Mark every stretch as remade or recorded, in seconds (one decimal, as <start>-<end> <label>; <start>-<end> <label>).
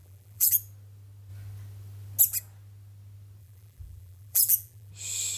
0.0-0.5 remade; 0.5-3.4 recorded; 3.4-4.9 remade; 4.9-5.4 recorded